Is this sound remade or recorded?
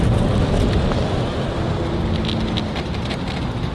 recorded